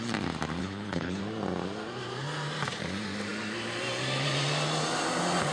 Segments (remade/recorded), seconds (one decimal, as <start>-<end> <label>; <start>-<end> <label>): 0.0-0.6 recorded; 0.6-1.2 remade; 1.2-5.5 recorded